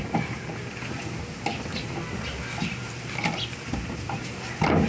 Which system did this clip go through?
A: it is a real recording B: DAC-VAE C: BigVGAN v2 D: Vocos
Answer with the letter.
A